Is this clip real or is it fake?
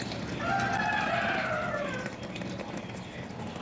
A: real